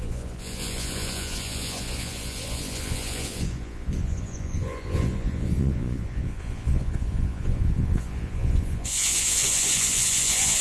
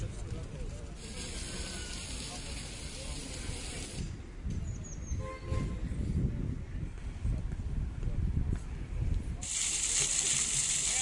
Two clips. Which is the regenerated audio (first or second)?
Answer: first